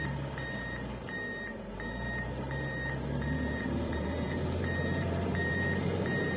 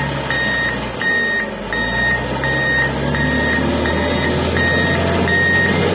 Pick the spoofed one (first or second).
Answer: first